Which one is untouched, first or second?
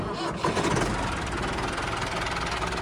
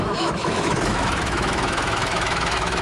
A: first